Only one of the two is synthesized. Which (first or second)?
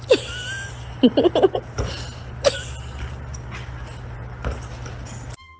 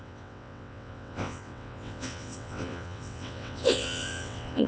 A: second